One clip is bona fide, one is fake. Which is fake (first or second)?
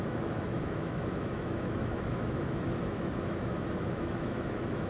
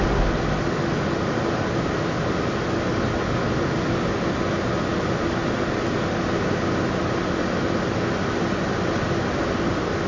first